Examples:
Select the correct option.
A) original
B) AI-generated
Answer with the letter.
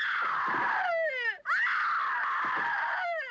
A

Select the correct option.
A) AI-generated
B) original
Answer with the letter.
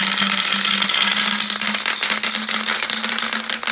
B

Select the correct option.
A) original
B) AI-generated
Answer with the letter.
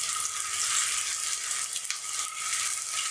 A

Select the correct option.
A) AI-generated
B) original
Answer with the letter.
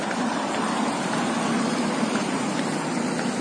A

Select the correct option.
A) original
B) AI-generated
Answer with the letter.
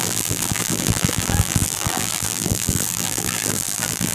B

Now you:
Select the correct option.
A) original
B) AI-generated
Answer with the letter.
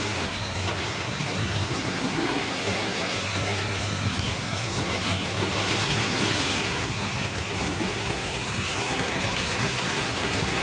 B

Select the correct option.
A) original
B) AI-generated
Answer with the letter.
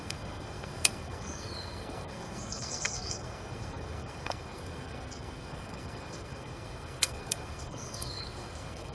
B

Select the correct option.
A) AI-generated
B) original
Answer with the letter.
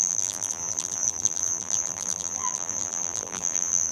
A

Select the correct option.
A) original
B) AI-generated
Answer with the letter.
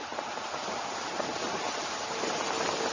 A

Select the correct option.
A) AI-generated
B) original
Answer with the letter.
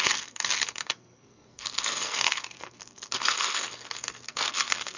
A